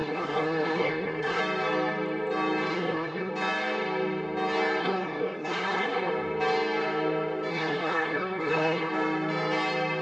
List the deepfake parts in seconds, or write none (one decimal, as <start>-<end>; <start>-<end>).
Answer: 0.0-1.4; 2.7-3.3; 4.8-6.1; 7.5-8.9